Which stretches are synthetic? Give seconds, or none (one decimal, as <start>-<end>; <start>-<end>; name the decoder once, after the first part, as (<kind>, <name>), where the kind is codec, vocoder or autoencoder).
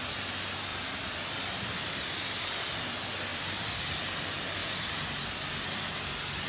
0.7-2.5 (vocoder, BigVGAN v2); 3.3-4.0; 4.6-5.3